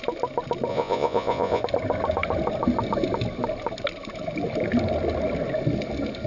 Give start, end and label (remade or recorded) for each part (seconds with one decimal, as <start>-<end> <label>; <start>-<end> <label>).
0.0-0.7 recorded; 0.7-1.6 remade; 1.6-6.3 recorded